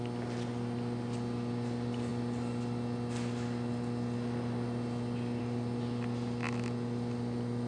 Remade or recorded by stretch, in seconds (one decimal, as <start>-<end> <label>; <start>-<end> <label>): 0.0-7.7 recorded